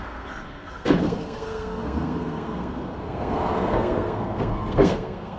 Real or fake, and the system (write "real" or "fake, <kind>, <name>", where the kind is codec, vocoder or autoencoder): fake, codec, SNAC